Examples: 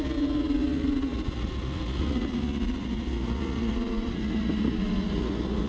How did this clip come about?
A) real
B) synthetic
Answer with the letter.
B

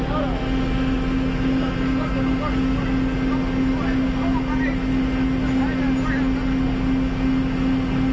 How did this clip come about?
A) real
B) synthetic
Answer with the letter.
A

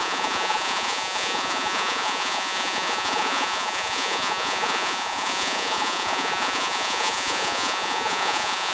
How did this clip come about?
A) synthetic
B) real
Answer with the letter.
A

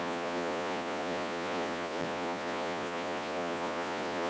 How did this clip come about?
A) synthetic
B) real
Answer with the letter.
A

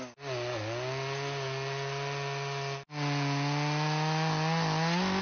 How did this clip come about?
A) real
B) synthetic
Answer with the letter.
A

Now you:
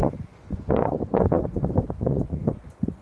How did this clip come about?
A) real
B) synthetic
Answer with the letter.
B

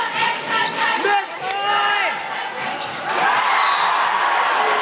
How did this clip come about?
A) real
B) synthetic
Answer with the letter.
A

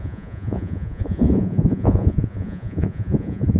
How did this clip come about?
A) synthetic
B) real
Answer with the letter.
A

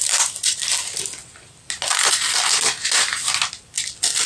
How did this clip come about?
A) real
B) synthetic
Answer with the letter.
A